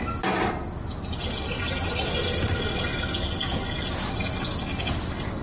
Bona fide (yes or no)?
yes